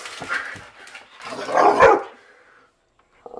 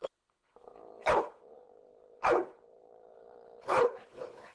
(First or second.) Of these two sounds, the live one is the first